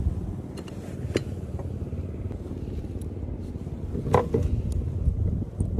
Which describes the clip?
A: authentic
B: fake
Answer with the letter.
A